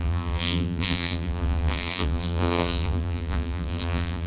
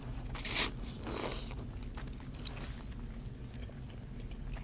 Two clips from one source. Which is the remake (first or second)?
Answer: first